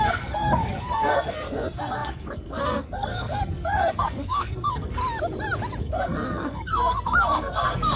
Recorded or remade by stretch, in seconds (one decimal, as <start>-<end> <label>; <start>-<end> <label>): 0.0-5.0 remade; 5.0-5.8 recorded; 5.8-8.0 remade